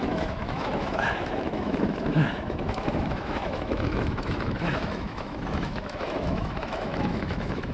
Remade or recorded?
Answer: remade